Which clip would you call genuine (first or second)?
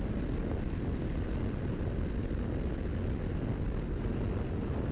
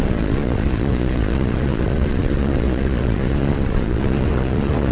first